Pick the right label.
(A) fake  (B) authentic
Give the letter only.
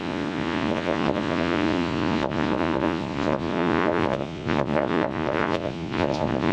A